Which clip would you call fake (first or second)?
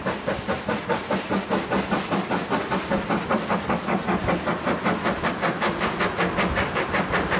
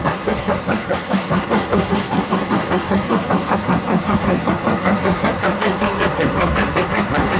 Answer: second